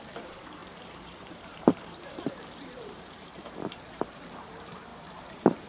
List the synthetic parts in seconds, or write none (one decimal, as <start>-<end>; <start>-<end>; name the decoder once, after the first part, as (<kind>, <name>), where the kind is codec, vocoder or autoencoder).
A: 0.0-5.7 (vocoder, BigVGAN v2)